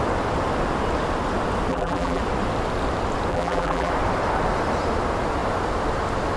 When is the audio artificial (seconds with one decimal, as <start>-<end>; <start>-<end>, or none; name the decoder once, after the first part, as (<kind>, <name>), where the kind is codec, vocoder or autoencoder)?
1.7-2.2 (vocoder, BigVGAN v2); 3.3-3.9